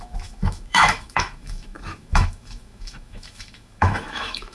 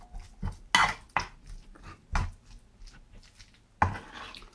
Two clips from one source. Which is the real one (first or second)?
second